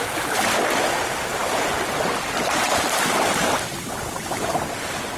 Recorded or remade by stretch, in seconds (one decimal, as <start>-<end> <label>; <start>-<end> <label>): 0.0-5.2 recorded